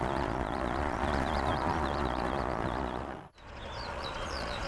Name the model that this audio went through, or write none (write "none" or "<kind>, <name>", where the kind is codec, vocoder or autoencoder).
vocoder, Vocos